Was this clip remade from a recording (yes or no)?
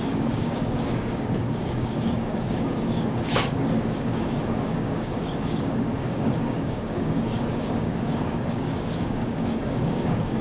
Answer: yes